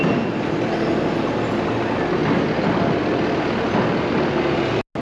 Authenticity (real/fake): real